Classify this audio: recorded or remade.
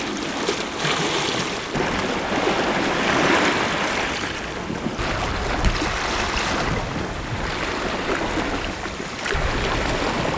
recorded